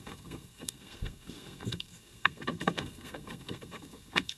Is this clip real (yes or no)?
no